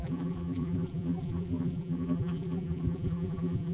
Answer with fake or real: fake